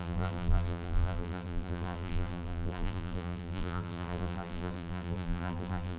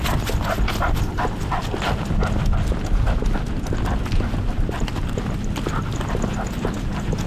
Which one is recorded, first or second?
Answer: second